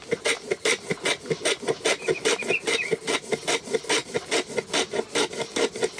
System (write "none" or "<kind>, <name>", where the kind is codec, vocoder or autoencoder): none